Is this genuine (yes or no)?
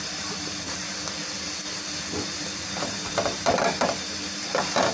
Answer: yes